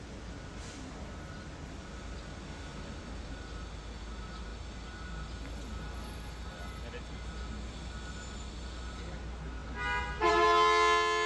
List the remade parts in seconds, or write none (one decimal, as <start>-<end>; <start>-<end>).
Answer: none